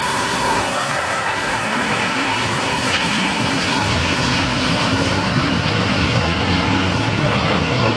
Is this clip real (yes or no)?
no